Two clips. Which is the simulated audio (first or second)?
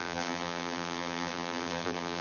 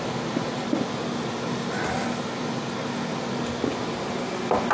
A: first